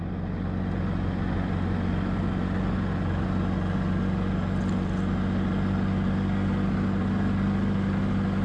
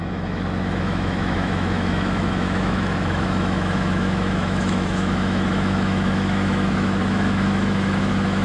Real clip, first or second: first